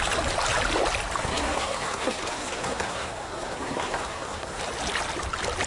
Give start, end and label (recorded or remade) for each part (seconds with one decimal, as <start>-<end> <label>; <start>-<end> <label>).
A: 0.0-1.2 recorded; 1.2-4.6 remade; 4.6-5.7 recorded